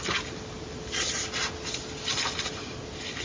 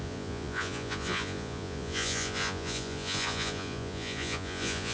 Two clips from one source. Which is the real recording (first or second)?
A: first